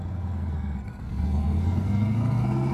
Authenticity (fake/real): fake